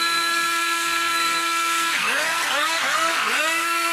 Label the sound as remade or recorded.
remade